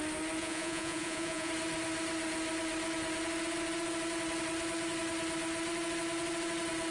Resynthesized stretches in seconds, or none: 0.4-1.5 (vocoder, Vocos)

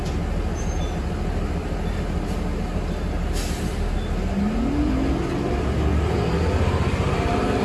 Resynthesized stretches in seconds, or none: none

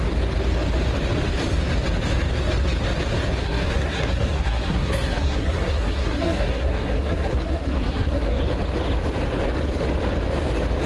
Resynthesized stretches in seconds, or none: 3.4-8.4 (codec, SNAC)

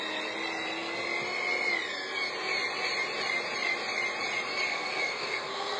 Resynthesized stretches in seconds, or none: 4.7-5.8 (codec, SNAC)